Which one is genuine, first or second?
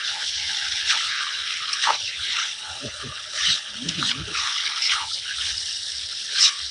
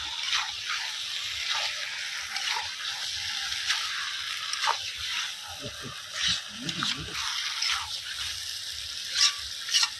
second